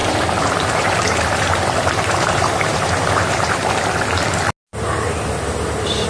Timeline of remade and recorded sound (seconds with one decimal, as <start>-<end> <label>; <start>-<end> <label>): 0.0-3.7 remade; 3.7-6.1 recorded